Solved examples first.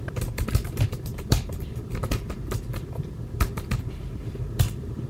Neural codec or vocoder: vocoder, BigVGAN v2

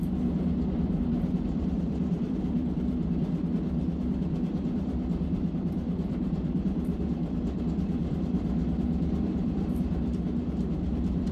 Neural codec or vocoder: vocoder, BigVGAN v2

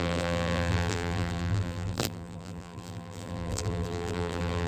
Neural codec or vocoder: vocoder, BigVGAN v2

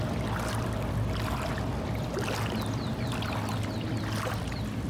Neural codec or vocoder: none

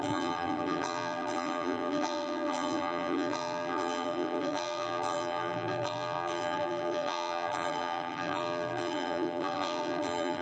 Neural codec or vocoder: vocoder, BigVGAN v2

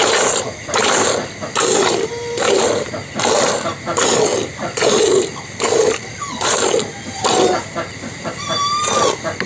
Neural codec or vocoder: vocoder, BigVGAN v2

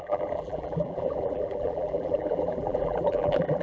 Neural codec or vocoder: vocoder, BigVGAN v2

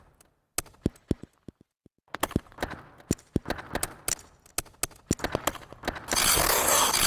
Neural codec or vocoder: none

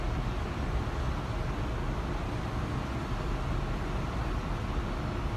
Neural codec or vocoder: none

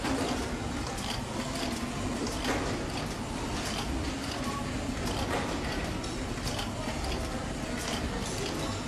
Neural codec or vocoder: none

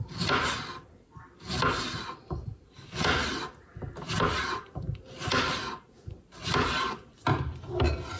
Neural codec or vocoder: none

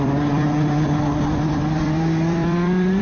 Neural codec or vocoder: vocoder, BigVGAN v2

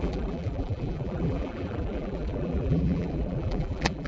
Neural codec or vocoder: vocoder, BigVGAN v2